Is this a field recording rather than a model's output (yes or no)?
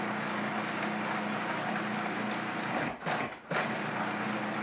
yes